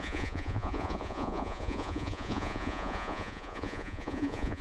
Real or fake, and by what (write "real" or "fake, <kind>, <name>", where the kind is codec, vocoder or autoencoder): fake, vocoder, Vocos